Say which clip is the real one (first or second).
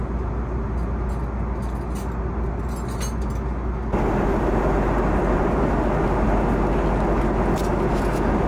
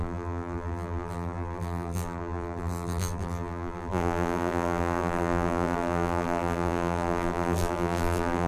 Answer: first